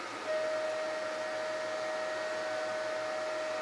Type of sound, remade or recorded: recorded